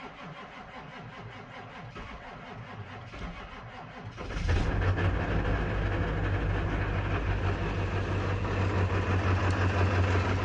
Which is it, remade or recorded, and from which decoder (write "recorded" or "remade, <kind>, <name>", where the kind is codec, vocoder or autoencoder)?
recorded